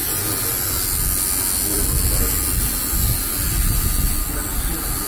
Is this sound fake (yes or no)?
no